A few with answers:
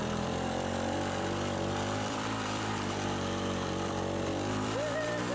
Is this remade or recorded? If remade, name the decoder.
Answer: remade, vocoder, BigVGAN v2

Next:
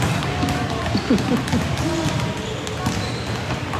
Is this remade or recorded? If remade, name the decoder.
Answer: recorded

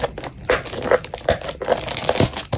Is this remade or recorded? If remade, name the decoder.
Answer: recorded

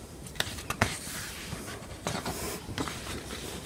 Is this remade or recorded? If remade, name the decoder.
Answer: remade, vocoder, BigVGAN v2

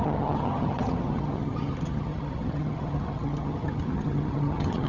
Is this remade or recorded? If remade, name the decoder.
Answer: remade, vocoder, HiFi-GAN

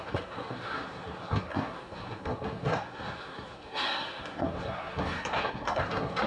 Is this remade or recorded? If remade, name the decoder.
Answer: remade, codec, SNAC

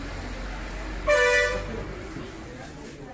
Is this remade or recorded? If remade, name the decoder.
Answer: recorded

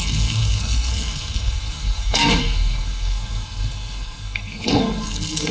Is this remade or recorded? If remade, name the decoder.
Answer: remade, codec, SNAC